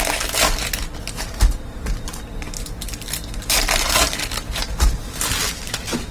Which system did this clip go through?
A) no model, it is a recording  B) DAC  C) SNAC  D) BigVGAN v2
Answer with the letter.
A